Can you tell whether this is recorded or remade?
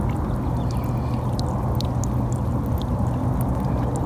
recorded